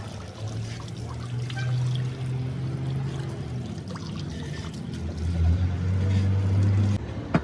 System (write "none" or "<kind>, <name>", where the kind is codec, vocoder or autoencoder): none